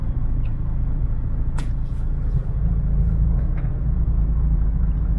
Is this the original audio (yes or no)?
no